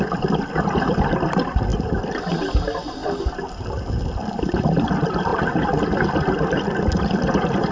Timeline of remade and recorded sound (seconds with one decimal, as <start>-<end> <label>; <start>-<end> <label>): 0.0-3.0 remade; 3.0-4.4 recorded; 4.4-5.3 remade; 5.3-7.7 recorded